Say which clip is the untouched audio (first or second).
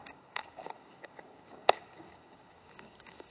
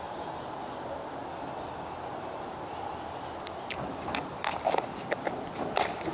second